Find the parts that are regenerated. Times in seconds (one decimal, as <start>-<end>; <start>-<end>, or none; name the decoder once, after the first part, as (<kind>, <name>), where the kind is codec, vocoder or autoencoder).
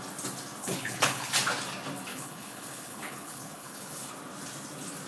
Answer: 0.6-1.3 (codec, HILCodec); 2.1-4.1